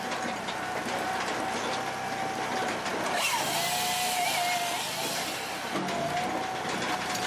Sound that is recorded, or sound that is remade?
recorded